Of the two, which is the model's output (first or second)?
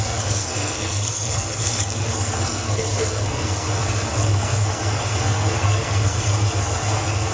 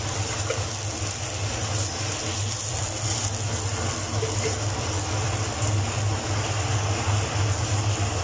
first